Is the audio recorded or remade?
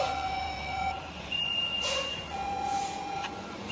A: remade